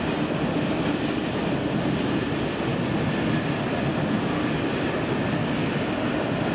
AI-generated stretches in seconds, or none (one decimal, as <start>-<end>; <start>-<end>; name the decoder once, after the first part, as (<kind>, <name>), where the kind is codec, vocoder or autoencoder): 5.4-5.9 (autoencoder, DAC-VAE)